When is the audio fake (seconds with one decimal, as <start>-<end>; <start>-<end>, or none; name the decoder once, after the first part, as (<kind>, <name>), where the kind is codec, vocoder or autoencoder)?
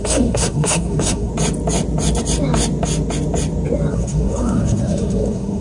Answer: 0.0-1.3 (codec, SNAC); 3.9-5.6